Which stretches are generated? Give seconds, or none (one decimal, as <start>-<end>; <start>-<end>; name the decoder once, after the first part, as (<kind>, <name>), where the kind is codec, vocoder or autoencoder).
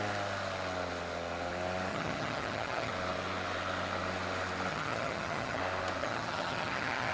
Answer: 1.9-2.9 (vocoder, HiFi-GAN); 4.7-5.6; 6.0-7.1